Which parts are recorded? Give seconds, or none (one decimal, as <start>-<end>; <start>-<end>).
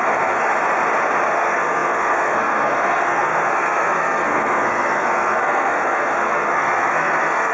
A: 0.5-1.3